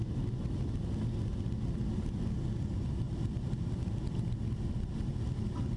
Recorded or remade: recorded